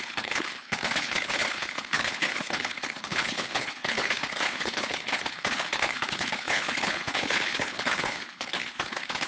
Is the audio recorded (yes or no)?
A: no